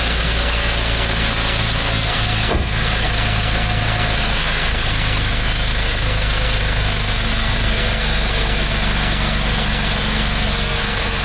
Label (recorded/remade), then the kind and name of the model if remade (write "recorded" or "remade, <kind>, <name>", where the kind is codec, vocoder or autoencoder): remade, codec, SNAC